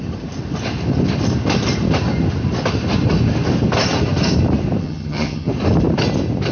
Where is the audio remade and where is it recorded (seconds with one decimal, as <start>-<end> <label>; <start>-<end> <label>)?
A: 0.0-4.8 recorded; 4.8-5.5 remade; 5.5-6.5 recorded